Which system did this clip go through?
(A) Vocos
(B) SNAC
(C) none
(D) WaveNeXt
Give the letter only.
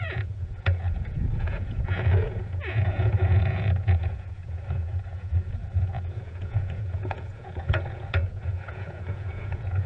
A